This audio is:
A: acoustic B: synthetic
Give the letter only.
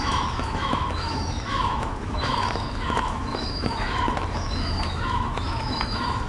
B